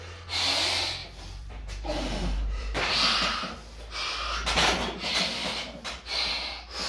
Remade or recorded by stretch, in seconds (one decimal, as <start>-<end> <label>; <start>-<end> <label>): 0.0-1.0 recorded; 1.0-3.2 remade; 3.2-6.9 recorded